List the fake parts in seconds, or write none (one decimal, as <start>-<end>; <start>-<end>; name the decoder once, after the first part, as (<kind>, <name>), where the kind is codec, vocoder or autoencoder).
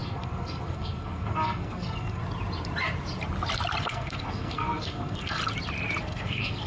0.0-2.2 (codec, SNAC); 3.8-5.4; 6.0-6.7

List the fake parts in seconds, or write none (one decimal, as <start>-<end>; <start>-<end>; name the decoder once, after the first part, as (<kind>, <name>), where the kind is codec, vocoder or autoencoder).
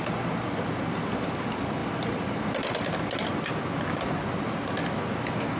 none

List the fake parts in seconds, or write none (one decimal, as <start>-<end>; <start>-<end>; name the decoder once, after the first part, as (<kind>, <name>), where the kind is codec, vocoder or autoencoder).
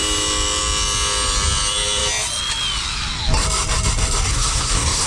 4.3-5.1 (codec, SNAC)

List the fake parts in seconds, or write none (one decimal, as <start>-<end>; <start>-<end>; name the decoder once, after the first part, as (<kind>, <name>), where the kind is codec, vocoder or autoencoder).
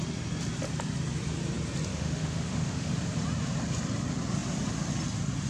1.9-2.9 (autoencoder, DAC-VAE)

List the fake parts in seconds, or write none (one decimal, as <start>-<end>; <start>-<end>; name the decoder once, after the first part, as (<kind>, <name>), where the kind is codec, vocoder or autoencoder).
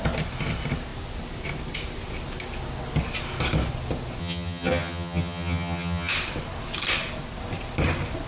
4.2-6.1 (vocoder, HiFi-GAN)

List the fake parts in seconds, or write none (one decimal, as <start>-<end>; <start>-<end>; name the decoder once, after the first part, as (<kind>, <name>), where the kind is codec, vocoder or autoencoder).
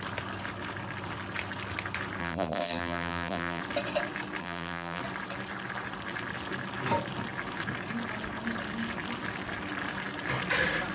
2.2-3.6 (vocoder, BigVGAN v2); 4.4-5.0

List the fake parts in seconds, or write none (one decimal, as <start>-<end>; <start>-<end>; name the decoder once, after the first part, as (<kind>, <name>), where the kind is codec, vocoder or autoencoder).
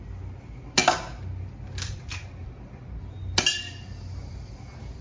none